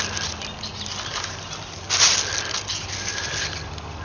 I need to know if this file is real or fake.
real